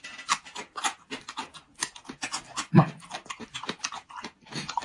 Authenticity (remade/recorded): recorded